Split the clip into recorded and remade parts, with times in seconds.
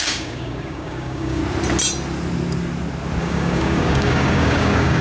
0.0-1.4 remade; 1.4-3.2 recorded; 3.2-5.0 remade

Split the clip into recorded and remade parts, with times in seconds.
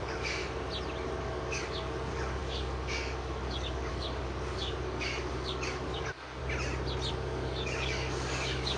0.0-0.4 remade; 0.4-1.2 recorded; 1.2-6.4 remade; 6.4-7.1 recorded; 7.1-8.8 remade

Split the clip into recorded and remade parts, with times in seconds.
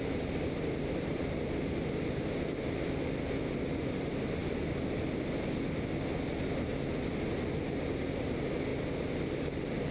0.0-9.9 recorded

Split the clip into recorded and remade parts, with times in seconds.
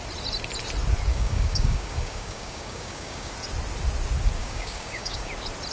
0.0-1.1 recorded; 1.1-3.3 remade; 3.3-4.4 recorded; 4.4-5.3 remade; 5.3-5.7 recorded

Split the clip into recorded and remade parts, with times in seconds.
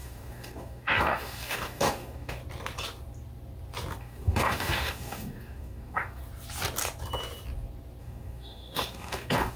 0.0-2.4 remade; 2.4-4.0 recorded; 4.0-6.2 remade; 6.2-8.0 recorded; 8.0-9.6 remade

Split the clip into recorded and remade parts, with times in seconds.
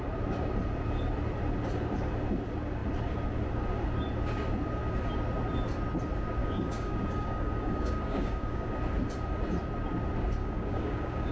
0.0-6.4 recorded; 6.4-8.7 remade; 8.7-10.4 recorded; 10.4-11.3 remade